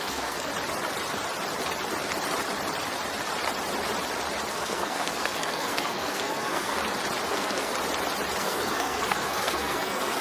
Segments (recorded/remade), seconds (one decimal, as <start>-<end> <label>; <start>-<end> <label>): 0.0-0.5 remade; 0.5-4.5 recorded; 4.5-6.8 remade; 6.8-7.3 recorded; 7.3-7.7 remade; 7.7-8.4 recorded; 8.4-10.2 remade